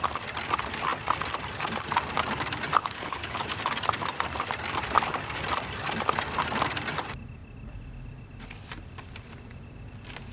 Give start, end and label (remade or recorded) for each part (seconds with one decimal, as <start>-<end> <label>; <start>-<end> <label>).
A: 0.0-2.8 recorded; 2.8-3.4 remade; 3.4-10.3 recorded